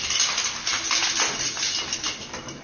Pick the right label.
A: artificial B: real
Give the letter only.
B